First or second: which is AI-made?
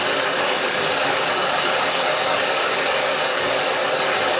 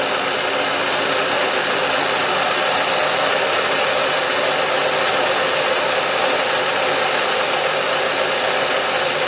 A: first